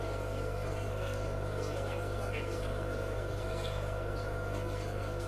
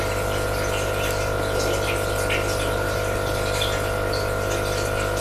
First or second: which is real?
second